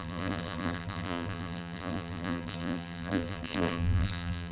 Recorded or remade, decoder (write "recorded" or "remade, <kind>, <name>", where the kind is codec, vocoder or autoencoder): remade, vocoder, BigVGAN v2